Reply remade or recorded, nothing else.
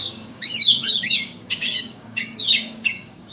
remade